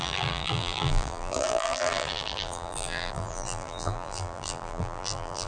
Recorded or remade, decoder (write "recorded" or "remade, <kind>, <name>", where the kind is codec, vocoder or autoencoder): remade, vocoder, BigVGAN v2